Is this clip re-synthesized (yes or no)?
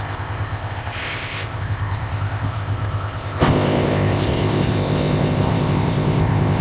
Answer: yes